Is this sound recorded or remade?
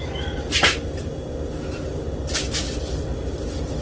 recorded